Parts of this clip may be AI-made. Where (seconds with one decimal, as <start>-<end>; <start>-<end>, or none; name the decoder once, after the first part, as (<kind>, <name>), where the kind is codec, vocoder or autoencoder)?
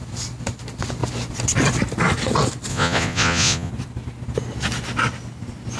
2.7-3.7 (vocoder, Vocos)